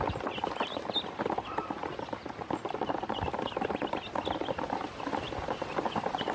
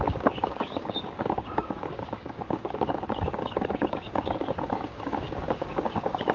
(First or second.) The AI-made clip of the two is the second